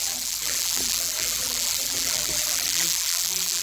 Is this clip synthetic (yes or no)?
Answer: yes